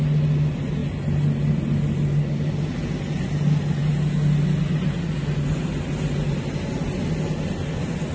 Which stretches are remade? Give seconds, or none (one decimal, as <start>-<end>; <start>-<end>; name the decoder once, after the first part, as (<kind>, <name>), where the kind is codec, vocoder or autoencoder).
none